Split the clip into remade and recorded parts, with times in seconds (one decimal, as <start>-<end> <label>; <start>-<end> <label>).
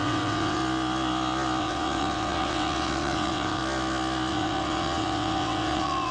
0.0-0.6 remade; 0.6-1.6 recorded; 1.6-3.6 remade; 3.6-4.3 recorded; 4.3-6.1 remade